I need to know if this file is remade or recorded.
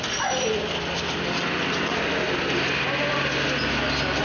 recorded